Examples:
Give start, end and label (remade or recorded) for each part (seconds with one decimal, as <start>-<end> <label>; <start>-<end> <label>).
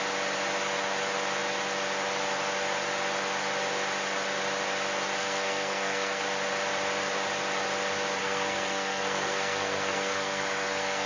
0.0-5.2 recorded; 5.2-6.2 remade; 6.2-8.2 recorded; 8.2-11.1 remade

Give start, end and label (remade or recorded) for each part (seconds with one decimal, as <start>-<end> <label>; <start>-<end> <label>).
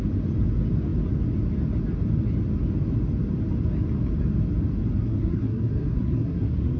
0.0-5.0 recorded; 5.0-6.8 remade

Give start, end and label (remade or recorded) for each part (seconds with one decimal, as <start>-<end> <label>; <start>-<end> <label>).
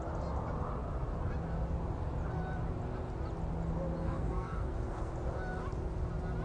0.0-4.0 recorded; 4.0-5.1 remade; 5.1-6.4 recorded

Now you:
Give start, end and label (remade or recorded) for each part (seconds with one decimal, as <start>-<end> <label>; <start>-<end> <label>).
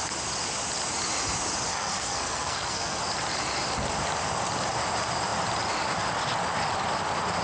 0.0-1.7 recorded; 1.7-3.0 remade; 3.0-7.4 recorded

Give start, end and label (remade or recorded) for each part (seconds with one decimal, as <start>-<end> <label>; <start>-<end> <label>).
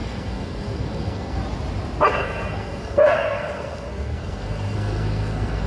0.0-1.4 remade; 1.4-2.1 recorded; 2.1-5.7 remade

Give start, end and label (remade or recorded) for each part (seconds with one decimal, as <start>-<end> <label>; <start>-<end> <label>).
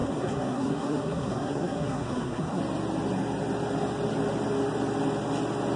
0.0-2.6 remade; 2.6-5.8 recorded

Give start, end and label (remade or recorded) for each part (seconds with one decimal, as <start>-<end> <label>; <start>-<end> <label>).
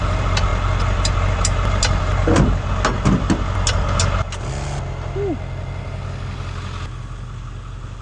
0.0-8.0 recorded